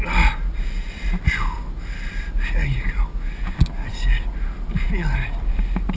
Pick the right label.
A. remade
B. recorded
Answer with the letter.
B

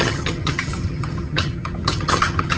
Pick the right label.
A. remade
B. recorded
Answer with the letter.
A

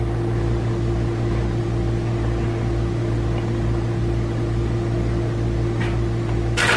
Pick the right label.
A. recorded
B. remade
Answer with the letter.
A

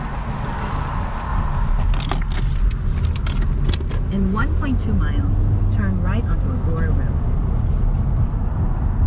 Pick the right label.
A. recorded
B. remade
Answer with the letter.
A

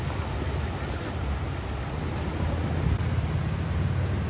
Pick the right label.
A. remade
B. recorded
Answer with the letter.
B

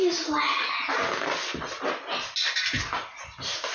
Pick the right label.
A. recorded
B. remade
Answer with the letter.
A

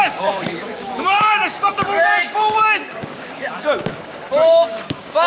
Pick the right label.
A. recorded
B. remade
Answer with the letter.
B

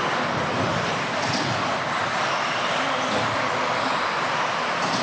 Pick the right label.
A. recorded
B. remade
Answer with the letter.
A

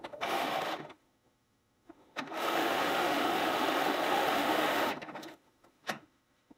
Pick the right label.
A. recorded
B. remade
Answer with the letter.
B